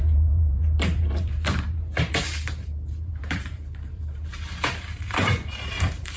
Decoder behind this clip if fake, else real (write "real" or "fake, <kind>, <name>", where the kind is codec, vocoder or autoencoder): fake, vocoder, BigVGAN v2